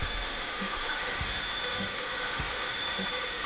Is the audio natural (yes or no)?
no